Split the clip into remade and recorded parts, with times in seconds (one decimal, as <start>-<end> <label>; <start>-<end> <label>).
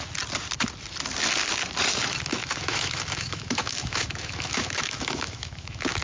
0.0-2.3 recorded; 2.3-6.0 remade